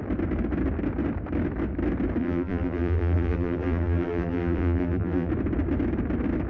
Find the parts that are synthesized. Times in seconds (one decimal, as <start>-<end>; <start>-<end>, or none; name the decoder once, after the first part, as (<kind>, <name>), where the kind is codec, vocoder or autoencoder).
2.2-5.3 (vocoder, BigVGAN v2)